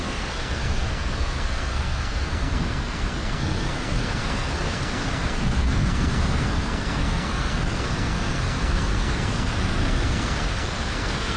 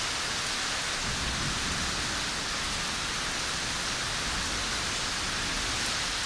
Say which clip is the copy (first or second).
first